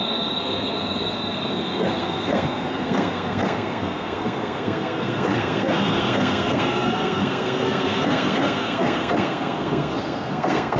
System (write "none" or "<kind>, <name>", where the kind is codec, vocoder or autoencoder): codec, SNAC